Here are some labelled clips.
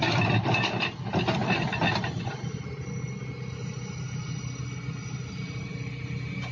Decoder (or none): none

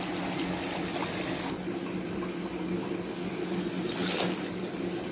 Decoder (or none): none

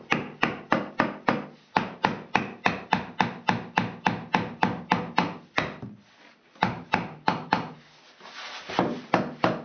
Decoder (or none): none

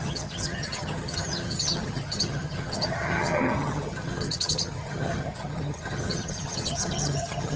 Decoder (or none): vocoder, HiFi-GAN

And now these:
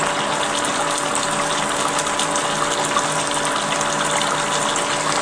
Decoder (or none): none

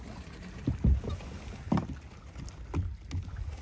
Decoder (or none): none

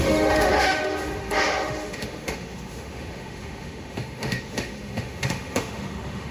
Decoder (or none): autoencoder, DAC-VAE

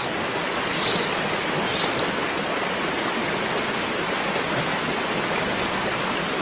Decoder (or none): none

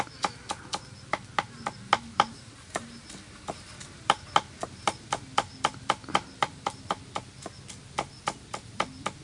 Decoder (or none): none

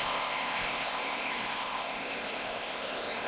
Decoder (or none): codec, ZipCodec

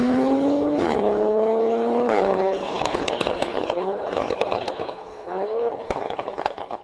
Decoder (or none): codec, HILCodec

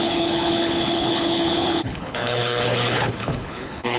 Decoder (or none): codec, HILCodec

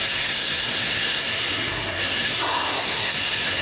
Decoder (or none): codec, SNAC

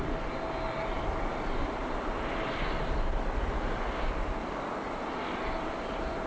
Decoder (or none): none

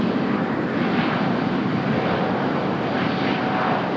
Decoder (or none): none